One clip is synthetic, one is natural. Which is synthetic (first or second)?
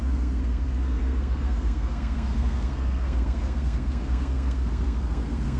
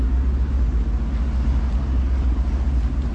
first